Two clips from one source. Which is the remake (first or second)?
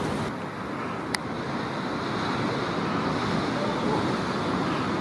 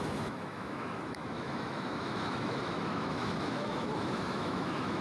second